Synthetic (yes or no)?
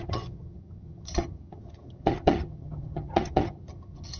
yes